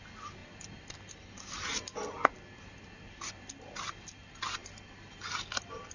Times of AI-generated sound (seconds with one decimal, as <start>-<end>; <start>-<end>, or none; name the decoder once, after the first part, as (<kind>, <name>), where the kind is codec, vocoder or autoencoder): none